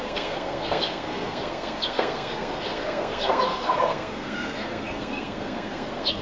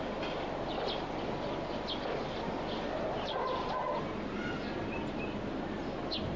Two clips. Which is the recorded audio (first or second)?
second